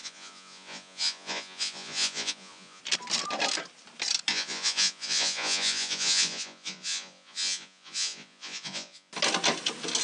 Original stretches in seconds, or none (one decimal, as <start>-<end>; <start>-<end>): 2.8-4.3; 9.1-10.0